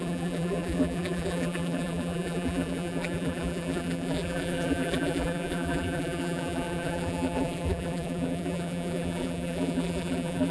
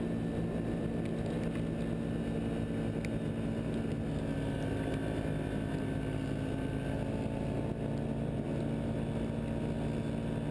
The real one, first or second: second